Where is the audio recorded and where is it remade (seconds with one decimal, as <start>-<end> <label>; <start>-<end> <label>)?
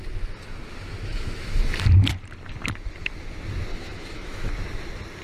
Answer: 0.0-1.1 recorded; 1.1-1.6 remade; 1.6-3.7 recorded; 3.7-4.5 remade; 4.5-5.2 recorded